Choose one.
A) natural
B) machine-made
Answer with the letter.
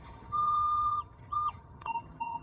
B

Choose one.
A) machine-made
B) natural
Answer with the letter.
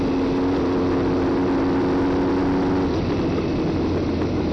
B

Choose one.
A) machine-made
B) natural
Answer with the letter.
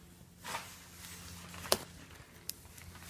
B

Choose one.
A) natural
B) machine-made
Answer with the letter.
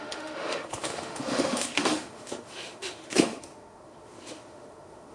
B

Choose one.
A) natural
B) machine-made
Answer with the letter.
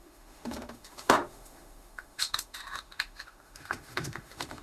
B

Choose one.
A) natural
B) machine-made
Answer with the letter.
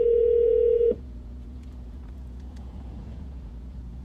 B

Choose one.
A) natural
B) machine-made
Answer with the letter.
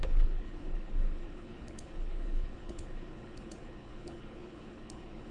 B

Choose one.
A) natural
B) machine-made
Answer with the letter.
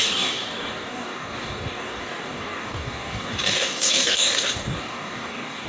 B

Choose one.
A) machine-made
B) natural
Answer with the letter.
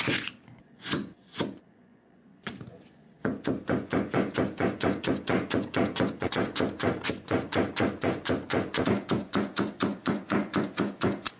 A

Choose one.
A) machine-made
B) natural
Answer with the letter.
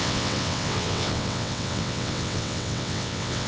A